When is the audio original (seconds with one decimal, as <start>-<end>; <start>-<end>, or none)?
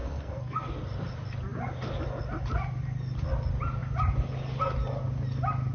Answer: 0.7-5.7